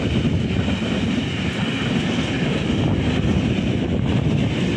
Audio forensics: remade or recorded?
recorded